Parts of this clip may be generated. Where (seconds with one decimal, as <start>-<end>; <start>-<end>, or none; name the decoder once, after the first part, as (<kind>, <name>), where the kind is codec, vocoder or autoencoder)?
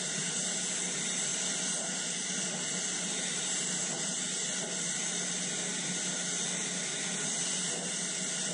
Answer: none